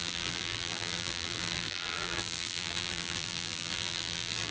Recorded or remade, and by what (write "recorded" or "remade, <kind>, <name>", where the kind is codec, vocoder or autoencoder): remade, vocoder, BigVGAN v2